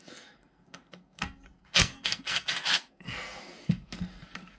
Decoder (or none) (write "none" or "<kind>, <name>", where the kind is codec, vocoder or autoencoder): codec, SNAC